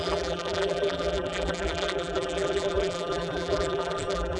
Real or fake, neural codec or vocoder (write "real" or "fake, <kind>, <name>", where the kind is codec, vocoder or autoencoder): fake, vocoder, BigVGAN v2